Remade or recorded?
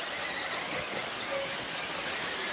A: recorded